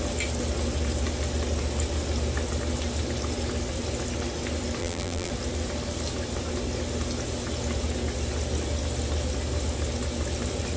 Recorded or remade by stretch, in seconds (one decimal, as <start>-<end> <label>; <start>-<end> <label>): 0.0-4.8 recorded; 4.8-5.3 remade; 5.3-10.8 recorded